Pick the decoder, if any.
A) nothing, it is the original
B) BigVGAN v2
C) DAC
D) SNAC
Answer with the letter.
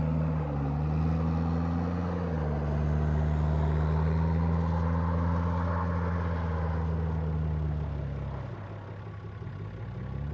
A